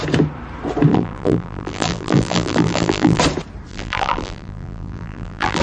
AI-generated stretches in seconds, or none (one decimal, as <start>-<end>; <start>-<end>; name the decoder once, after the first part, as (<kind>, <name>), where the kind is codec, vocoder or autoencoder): 0.9-3.2 (vocoder, BigVGAN v2); 3.7-5.6